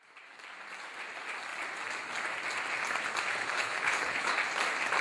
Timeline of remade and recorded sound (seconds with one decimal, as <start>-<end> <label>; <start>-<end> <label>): 0.0-3.4 recorded; 3.4-4.3 remade; 4.3-5.0 recorded